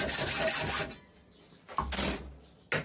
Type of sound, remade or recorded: recorded